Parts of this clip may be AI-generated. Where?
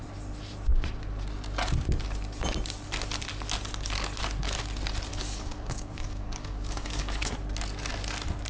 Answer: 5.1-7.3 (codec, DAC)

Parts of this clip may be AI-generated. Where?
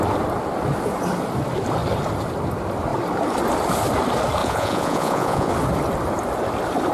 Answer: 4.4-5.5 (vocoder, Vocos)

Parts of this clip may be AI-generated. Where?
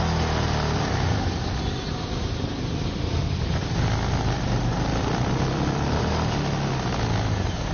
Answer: 2.2-6.0 (vocoder, BigVGAN v2)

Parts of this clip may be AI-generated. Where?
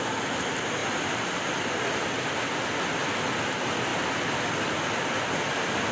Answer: none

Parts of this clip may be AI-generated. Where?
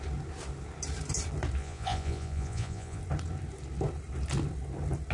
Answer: 1.6-3.0 (vocoder, Vocos)